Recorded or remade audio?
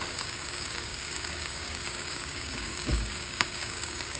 remade